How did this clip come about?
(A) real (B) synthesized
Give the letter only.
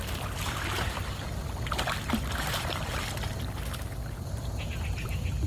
A